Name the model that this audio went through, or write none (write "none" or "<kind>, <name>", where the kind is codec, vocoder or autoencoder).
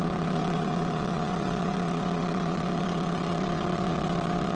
vocoder, WaveNeXt